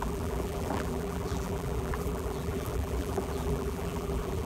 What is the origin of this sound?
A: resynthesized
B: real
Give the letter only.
A